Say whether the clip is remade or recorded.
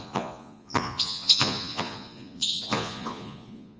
remade